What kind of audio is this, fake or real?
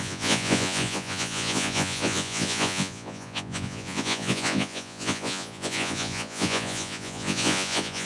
fake